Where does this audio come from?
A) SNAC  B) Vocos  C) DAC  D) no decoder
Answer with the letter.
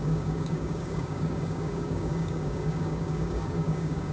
C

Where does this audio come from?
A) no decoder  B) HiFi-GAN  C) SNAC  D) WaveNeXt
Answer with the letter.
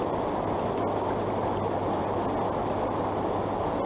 A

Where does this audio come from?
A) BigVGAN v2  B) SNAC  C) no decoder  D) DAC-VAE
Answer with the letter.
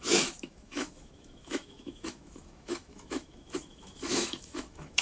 D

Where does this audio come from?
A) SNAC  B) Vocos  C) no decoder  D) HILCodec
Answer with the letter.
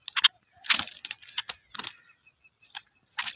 C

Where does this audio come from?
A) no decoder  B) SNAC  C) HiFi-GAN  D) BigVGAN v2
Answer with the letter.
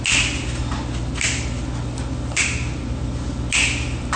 A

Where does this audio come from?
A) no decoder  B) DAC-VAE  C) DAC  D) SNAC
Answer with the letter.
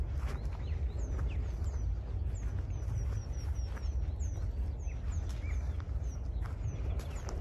A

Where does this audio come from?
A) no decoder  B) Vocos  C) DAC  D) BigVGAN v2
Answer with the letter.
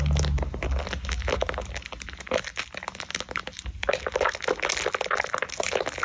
A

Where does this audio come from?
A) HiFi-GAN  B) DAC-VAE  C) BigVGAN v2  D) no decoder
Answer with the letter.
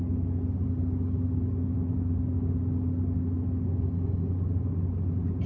D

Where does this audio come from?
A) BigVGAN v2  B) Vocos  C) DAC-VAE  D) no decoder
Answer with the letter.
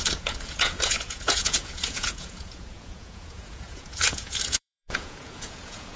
B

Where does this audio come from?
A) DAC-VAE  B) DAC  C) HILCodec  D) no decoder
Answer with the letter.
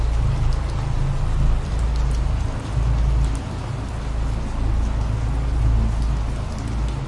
D